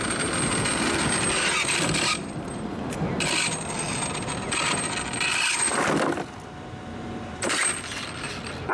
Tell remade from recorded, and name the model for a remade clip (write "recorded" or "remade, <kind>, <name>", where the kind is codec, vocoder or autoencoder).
recorded